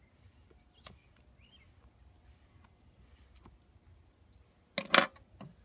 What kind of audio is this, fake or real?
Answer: real